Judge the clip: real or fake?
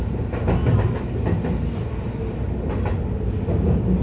real